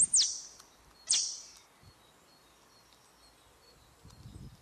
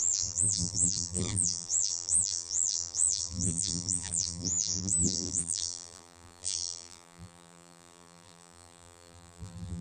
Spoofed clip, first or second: second